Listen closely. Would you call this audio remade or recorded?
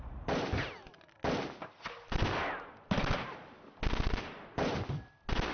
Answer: recorded